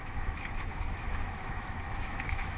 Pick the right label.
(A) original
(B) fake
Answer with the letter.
B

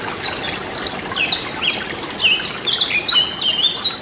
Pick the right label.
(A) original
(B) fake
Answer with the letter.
A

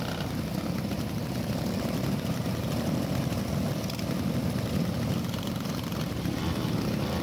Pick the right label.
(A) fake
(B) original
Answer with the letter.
B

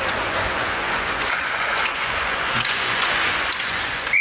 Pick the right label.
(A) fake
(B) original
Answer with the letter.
A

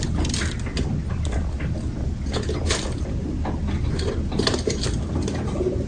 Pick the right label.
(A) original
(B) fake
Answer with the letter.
A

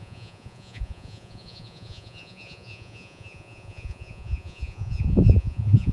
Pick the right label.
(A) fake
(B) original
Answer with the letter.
A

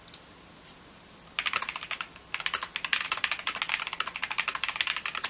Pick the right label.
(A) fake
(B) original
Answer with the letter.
B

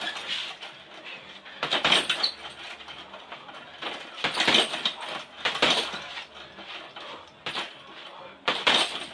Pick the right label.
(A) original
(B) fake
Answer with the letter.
A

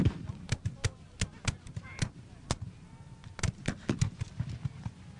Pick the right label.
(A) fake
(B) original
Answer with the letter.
B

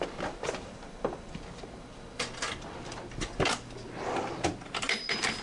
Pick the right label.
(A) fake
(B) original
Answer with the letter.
A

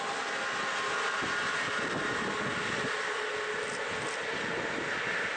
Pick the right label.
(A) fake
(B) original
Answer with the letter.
B